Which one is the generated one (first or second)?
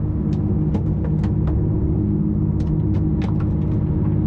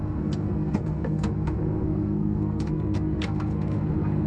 second